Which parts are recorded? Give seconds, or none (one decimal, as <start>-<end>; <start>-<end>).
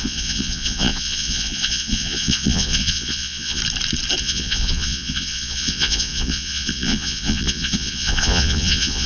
3.6-4.2